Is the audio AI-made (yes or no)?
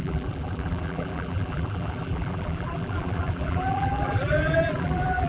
yes